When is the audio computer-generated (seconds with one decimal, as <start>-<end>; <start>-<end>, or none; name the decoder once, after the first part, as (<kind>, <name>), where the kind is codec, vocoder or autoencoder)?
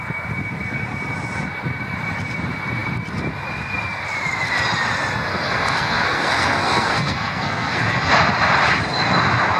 5.3-8.1 (codec, SNAC)